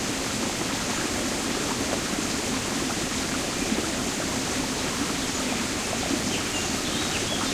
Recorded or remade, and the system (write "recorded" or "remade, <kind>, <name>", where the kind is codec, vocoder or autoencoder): recorded